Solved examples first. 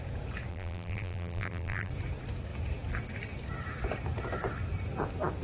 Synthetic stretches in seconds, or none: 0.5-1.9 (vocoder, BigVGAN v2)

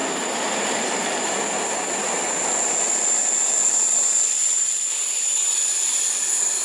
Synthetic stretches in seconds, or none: 0.0-1.4 (vocoder, BigVGAN v2); 3.6-4.7

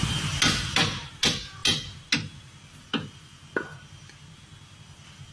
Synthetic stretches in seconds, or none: none

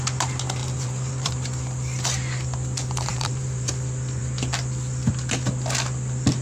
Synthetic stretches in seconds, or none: 0.6-1.3 (vocoder, BigVGAN v2); 3.1-3.7

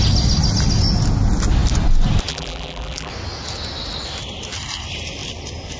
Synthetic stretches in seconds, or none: 2.3-3.1 (vocoder, BigVGAN v2)

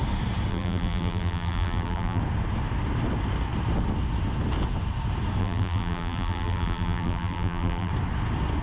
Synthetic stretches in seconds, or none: 0.5-2.2 (vocoder, BigVGAN v2); 5.4-7.9